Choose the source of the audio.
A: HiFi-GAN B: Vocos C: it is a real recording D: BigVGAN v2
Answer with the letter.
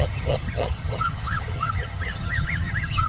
A